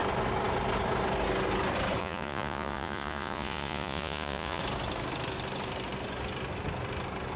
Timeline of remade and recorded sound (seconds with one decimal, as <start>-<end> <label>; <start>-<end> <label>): 0.0-2.0 recorded; 2.0-4.6 remade; 4.6-7.4 recorded